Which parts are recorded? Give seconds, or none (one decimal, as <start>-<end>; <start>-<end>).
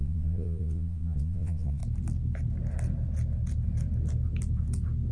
1.8-5.1